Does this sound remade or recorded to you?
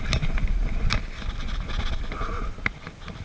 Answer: recorded